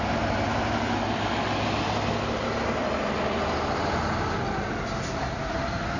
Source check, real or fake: real